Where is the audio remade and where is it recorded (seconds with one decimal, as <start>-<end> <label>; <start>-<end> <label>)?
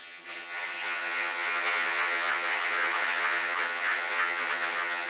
0.0-5.1 remade